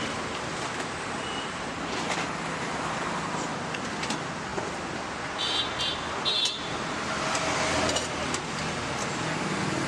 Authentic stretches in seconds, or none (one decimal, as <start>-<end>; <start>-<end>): 0.0-9.9